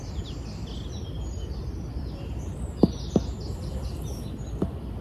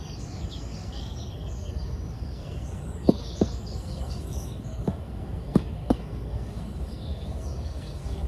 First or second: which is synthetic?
second